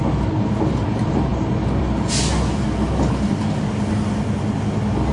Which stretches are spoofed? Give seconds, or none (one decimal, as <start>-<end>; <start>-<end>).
none